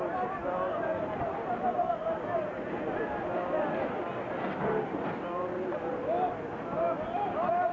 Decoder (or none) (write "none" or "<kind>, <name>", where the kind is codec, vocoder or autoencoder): none